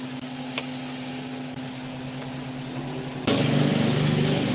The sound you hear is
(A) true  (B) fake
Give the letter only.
A